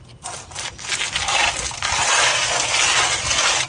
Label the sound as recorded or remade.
recorded